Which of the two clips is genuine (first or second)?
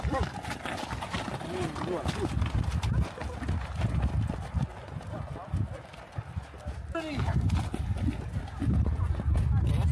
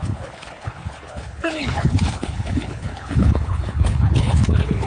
first